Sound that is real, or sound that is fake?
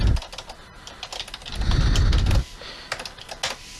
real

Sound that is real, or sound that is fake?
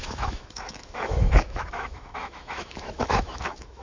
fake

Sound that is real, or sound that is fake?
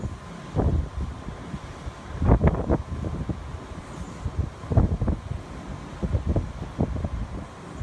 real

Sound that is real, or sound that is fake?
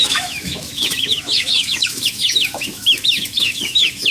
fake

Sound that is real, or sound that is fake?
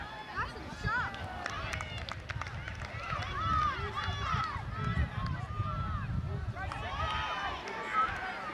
real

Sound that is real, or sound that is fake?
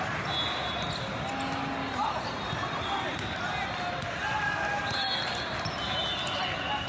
real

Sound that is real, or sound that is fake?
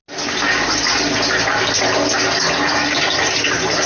real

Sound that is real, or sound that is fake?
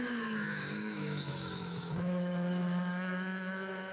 fake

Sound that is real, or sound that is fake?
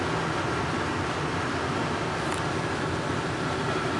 real